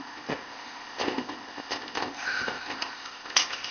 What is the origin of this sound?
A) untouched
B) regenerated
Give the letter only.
B